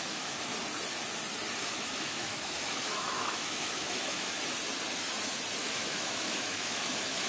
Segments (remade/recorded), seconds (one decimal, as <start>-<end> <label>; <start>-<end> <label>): 0.0-0.5 remade; 0.5-1.7 recorded; 1.7-4.4 remade; 4.4-5.6 recorded; 5.6-7.3 remade